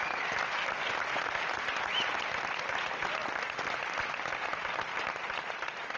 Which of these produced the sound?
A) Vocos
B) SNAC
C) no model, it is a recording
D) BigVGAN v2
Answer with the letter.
C